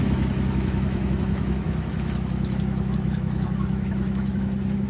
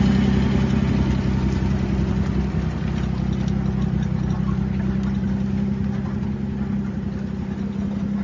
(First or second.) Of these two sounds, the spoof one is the first